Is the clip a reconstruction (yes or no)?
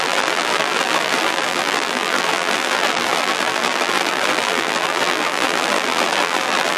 yes